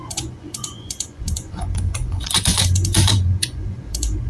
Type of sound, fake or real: fake